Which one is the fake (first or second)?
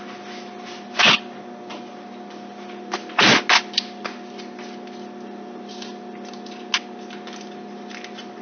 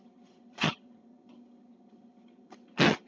second